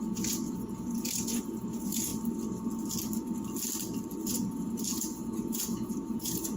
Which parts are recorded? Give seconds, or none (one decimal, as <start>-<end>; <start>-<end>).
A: 2.1-4.3

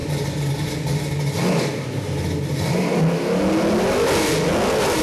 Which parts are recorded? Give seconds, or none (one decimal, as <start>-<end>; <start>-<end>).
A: 0.0-5.0